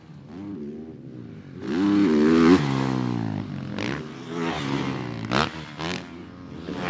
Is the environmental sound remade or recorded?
recorded